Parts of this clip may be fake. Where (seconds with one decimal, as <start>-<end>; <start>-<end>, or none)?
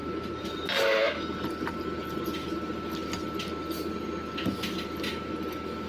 3.0-4.0